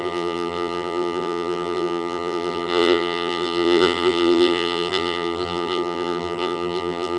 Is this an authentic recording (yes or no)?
no